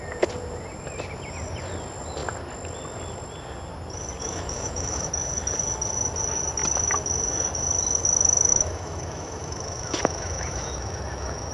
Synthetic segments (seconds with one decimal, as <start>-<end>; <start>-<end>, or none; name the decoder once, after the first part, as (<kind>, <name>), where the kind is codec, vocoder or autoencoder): 4.2-5.1 (autoencoder, DAC-VAE); 8.5-11.5